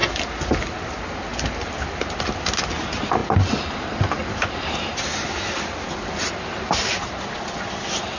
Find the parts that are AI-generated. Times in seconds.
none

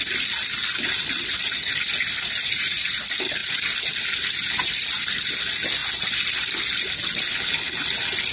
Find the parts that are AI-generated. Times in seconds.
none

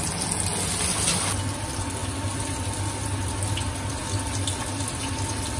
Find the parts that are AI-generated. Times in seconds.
none

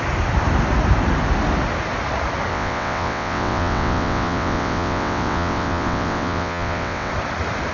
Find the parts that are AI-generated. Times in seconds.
2.5-7.1 (vocoder, WaveNeXt)

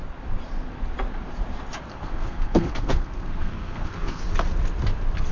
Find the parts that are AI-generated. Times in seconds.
1.9-4.2 (codec, SNAC)

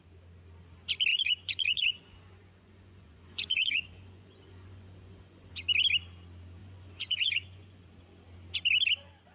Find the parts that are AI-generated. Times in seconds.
1.1-5.5 (vocoder, Vocos); 6.6-7.8